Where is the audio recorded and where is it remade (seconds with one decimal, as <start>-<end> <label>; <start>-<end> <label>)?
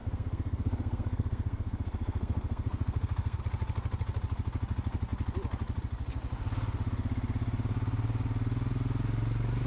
0.0-3.4 remade; 3.4-9.7 recorded